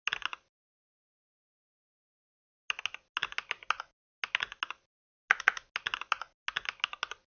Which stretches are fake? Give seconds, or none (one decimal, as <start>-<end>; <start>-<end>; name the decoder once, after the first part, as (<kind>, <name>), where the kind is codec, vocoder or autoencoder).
none